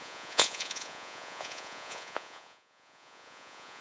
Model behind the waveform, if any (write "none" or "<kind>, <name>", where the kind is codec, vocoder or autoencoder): vocoder, Vocos